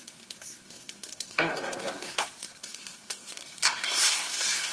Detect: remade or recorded remade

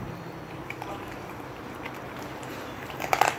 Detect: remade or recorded remade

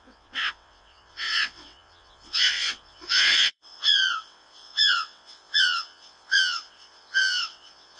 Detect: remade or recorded remade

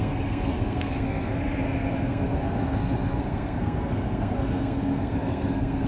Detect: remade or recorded remade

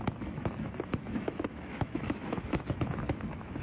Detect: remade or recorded remade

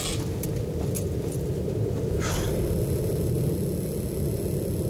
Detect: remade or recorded recorded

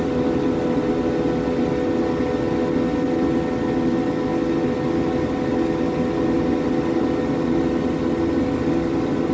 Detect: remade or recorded recorded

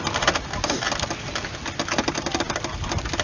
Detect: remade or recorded recorded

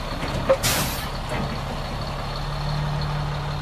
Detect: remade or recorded recorded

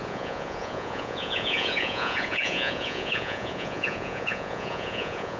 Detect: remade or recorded remade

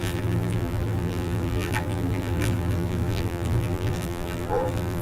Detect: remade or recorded remade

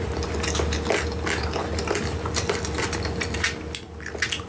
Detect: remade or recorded recorded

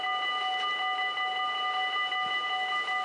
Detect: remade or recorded recorded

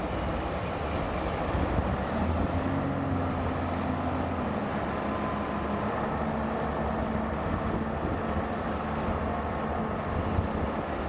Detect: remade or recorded recorded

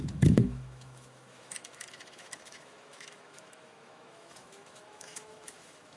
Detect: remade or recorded remade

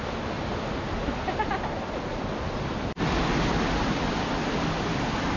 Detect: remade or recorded recorded